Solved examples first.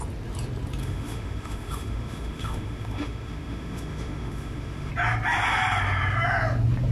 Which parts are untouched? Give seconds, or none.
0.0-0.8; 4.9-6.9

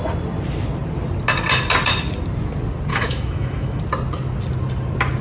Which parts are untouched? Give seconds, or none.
0.0-2.9; 3.8-5.2